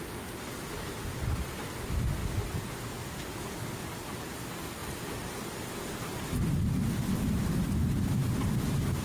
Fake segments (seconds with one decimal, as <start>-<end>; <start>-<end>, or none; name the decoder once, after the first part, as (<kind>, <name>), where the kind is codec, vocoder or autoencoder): 4.8-6.4 (vocoder, BigVGAN v2)